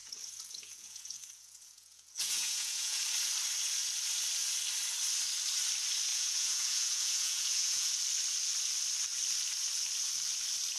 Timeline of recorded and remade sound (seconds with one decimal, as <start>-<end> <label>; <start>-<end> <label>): 0.0-3.0 remade; 3.0-6.1 recorded; 6.1-7.9 remade; 7.9-10.8 recorded